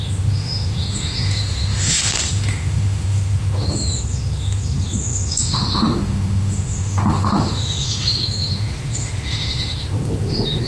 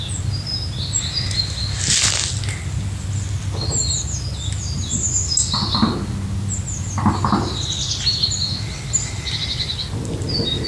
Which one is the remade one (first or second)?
first